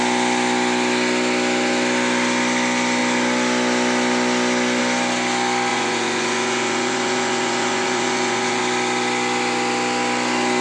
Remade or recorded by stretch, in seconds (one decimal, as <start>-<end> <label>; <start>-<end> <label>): 0.0-5.7 recorded; 5.7-8.6 remade; 8.6-10.6 recorded